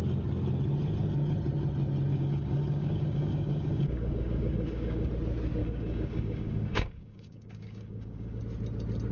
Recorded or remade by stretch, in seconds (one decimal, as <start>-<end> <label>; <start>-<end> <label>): 0.0-2.1 recorded; 2.1-5.1 remade; 5.1-5.6 recorded; 5.6-8.4 remade; 8.4-9.1 recorded